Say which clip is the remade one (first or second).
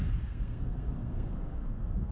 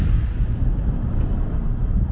first